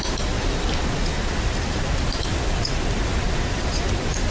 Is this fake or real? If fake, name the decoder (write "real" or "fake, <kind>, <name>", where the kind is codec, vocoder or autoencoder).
real